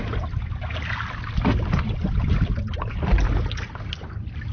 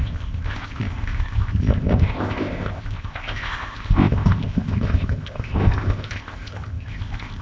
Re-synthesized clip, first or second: second